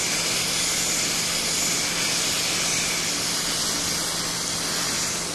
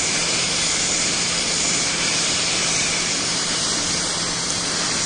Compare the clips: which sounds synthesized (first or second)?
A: second